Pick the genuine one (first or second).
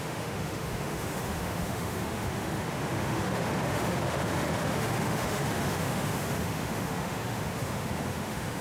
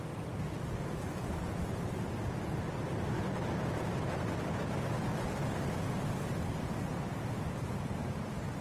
second